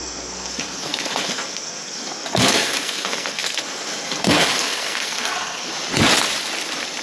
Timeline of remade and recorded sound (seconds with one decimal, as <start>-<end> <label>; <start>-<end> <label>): 0.0-5.7 remade; 5.7-7.0 recorded